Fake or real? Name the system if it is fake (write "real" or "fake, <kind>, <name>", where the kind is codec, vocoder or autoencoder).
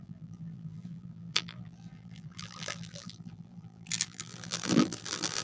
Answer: fake, vocoder, BigVGAN v2